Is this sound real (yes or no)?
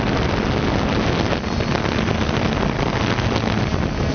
yes